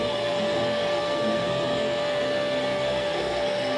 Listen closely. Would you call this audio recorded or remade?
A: remade